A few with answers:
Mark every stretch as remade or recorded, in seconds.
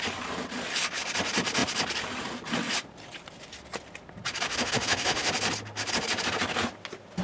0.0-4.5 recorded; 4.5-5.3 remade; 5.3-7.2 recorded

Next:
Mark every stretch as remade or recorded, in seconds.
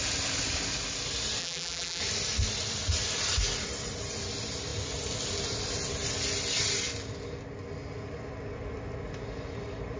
0.0-1.4 recorded; 1.4-2.0 remade; 2.0-10.0 recorded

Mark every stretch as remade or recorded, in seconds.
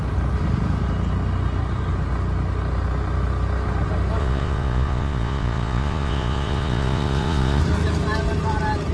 0.0-4.2 recorded; 4.2-7.6 remade; 7.6-8.9 recorded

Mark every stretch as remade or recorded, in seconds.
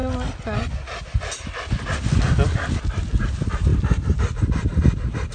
0.0-5.3 recorded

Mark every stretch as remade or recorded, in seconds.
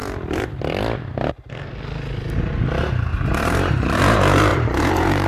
0.0-0.6 remade; 0.6-3.1 recorded; 3.1-4.0 remade; 4.0-4.5 recorded; 4.5-5.3 remade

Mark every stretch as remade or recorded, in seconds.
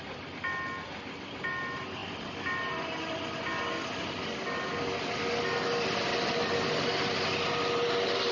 0.0-8.3 recorded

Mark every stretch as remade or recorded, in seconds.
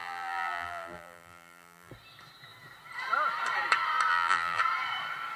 0.0-1.9 remade; 1.9-4.1 recorded; 4.1-4.6 remade; 4.6-5.4 recorded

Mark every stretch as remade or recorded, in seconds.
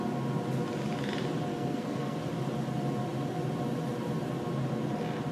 0.0-1.5 recorded; 1.5-2.2 remade; 2.2-5.3 recorded